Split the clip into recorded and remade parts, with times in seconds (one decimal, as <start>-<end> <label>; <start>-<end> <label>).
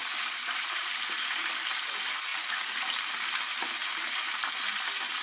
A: 0.0-1.0 remade; 1.0-3.8 recorded; 3.8-4.5 remade; 4.5-5.2 recorded